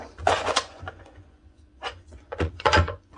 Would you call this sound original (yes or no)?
no